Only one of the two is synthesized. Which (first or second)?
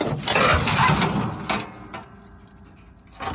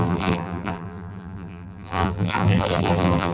second